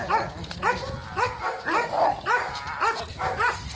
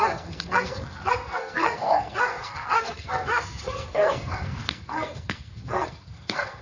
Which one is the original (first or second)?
first